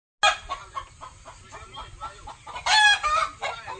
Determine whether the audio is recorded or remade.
recorded